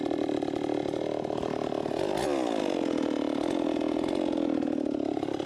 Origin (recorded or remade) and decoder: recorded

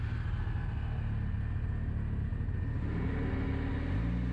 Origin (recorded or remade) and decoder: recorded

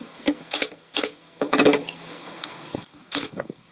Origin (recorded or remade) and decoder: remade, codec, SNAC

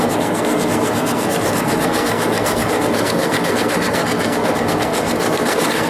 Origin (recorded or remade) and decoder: remade, codec, SNAC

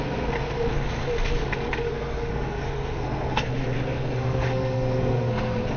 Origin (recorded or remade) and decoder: remade, codec, SNAC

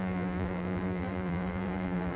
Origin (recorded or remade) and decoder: remade, vocoder, BigVGAN v2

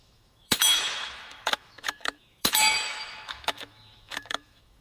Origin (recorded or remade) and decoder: remade, autoencoder, DAC-VAE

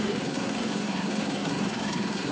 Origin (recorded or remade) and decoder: remade, codec, SNAC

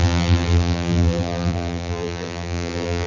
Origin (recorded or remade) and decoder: remade, vocoder, BigVGAN v2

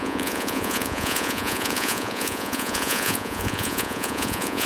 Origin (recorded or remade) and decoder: remade, vocoder, Vocos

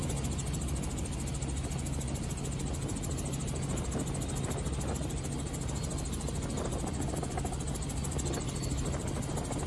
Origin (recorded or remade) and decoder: recorded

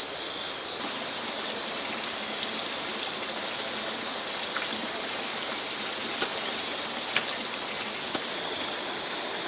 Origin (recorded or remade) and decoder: recorded